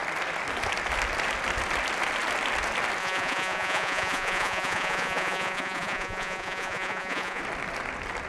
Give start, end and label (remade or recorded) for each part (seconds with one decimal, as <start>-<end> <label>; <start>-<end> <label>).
0.0-3.0 recorded; 3.0-7.4 remade; 7.4-8.3 recorded